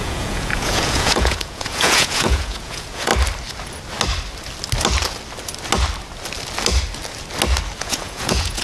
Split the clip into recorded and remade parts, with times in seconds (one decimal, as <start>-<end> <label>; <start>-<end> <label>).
0.0-3.1 remade; 3.1-7.8 recorded; 7.8-8.6 remade